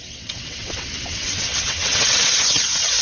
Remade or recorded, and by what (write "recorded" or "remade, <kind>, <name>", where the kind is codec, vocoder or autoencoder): remade, vocoder, WaveNeXt